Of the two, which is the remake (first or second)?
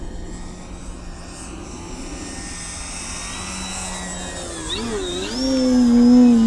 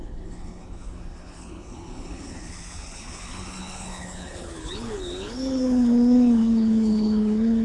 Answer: second